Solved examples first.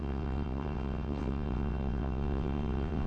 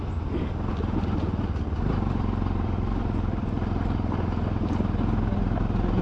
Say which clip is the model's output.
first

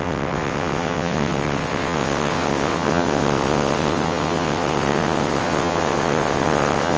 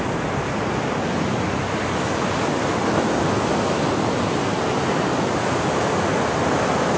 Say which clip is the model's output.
first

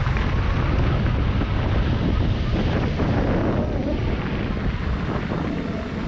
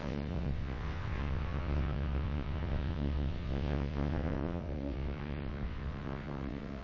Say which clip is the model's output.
second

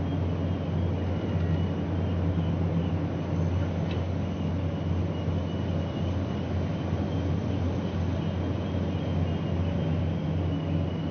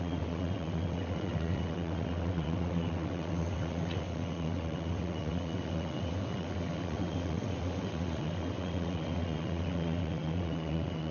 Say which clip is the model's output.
second